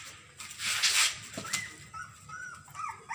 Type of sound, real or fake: real